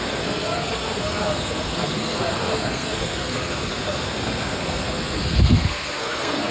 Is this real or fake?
fake